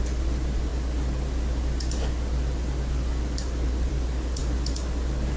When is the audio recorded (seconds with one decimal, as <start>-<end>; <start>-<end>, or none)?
0.0-5.4